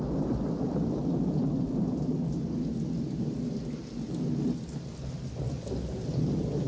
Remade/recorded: recorded